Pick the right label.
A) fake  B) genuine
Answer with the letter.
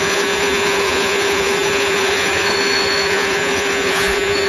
A